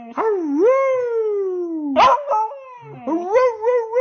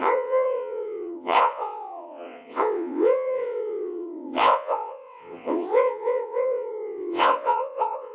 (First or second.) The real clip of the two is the first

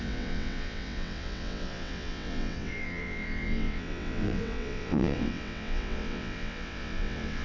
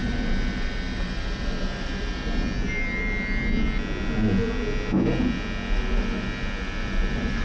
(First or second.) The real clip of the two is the second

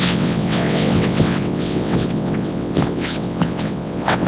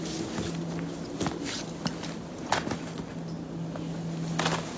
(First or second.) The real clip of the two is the second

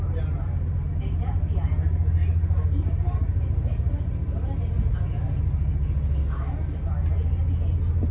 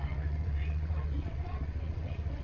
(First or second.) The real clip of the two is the first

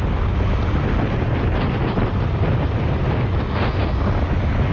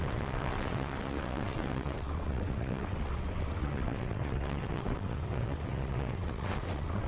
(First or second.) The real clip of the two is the first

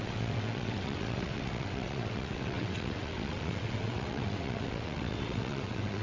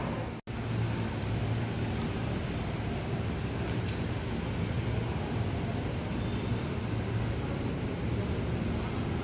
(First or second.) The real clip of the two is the second